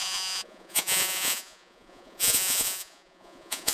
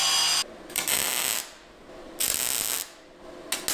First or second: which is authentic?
second